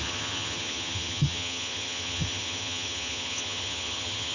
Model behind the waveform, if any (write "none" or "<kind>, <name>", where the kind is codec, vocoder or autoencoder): vocoder, HiFi-GAN